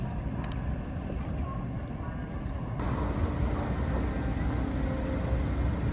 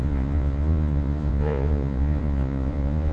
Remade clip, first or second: second